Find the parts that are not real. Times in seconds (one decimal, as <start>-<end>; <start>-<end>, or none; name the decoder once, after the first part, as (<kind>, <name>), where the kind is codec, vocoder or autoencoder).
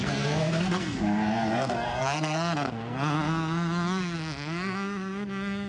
0.0-5.7 (codec, SNAC)